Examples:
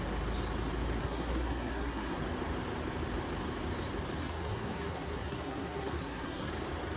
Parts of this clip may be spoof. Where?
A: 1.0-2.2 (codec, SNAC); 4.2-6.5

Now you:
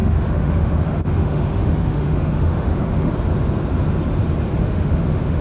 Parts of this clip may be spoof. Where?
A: 0.0-3.1 (autoencoder, DAC-VAE); 4.6-5.4

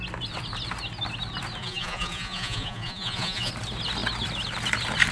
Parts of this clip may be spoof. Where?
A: 1.6-3.5 (vocoder, Vocos)